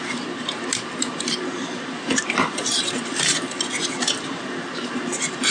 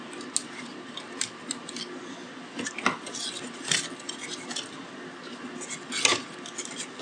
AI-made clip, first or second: first